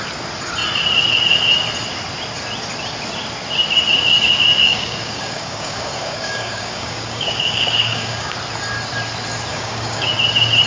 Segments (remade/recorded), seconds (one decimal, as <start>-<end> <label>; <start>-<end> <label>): 0.0-4.6 recorded; 4.6-8.4 remade; 8.4-9.5 recorded; 9.5-10.1 remade; 10.1-10.7 recorded